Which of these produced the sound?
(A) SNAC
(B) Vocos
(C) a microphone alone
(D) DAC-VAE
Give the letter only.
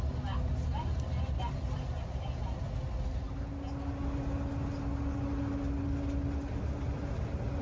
C